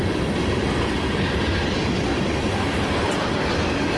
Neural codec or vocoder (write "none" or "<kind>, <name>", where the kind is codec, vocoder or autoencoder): none